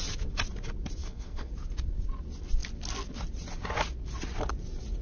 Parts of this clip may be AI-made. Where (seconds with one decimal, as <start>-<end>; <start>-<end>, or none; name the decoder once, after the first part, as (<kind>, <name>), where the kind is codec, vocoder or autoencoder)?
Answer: 1.0-1.5 (codec, SNAC)